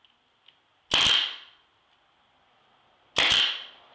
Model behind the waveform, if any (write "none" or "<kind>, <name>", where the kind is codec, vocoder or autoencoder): none